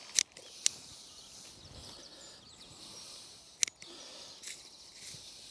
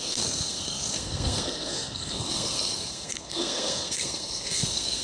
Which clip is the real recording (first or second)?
first